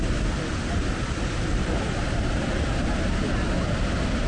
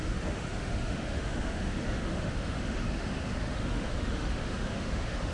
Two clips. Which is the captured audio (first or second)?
first